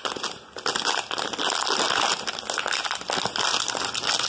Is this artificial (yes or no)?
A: no